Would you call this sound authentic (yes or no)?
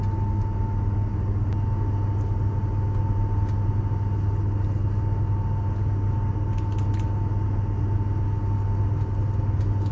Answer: yes